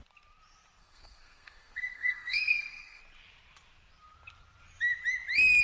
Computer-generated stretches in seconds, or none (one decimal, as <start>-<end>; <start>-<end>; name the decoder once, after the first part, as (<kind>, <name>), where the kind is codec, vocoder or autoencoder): 0.8-3.0 (codec, SNAC)